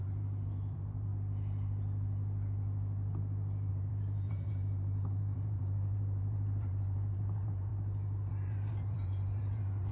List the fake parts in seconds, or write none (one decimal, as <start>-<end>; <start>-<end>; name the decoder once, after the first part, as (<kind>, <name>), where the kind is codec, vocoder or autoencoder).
0.0-1.1 (vocoder, BigVGAN v2); 3.7-7.7; 8.3-9.9